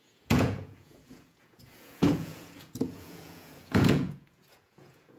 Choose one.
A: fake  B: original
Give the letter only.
A